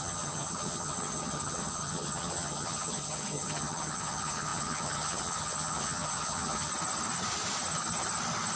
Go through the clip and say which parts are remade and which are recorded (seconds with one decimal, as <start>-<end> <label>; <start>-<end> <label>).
0.0-6.7 remade; 6.7-8.6 recorded